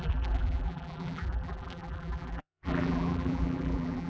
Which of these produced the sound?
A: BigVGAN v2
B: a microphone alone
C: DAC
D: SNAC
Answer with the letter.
A